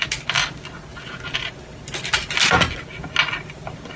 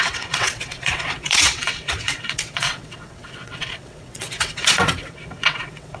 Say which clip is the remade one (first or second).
second